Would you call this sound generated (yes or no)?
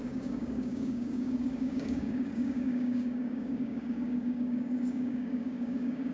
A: yes